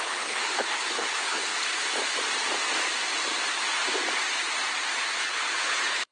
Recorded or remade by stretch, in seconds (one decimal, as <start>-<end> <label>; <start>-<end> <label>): 0.0-1.5 remade; 1.5-5.2 recorded; 5.2-6.1 remade